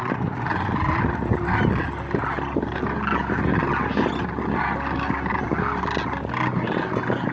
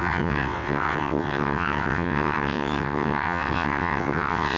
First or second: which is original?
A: first